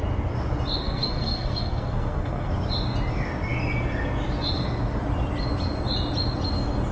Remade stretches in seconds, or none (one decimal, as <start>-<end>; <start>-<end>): 0.8-2.5